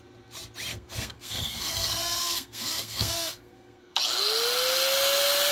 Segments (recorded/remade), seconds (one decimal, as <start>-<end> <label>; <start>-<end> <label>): 0.0-0.7 recorded; 0.7-4.0 remade; 4.0-5.5 recorded